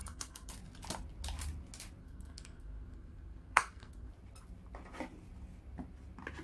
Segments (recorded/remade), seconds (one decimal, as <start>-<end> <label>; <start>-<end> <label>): 0.0-0.5 remade; 0.5-2.0 recorded; 2.0-4.1 remade; 4.1-6.4 recorded